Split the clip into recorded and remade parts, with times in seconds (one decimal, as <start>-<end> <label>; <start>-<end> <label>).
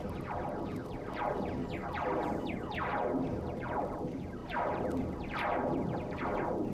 0.0-1.6 remade; 1.6-2.4 recorded; 2.4-6.7 remade